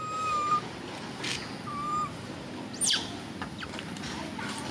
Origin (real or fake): real